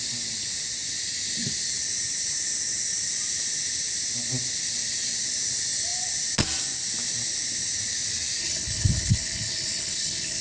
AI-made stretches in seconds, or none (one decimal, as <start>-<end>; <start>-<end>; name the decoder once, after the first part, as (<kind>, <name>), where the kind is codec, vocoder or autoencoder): 8.4-10.4 (codec, HILCodec)